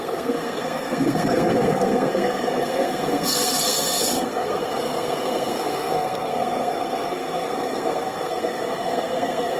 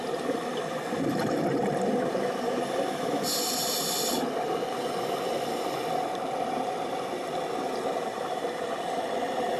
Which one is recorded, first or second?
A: second